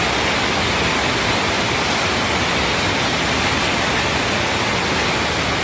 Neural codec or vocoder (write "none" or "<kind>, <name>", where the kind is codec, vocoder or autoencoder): none